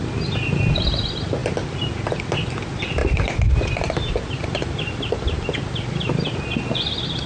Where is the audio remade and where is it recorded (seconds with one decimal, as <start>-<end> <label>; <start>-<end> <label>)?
0.0-7.3 recorded